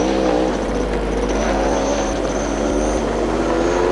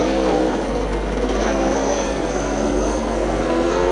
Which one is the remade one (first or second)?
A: second